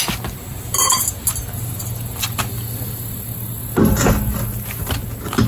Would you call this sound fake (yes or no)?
no